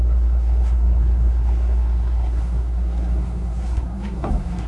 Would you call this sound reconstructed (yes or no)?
yes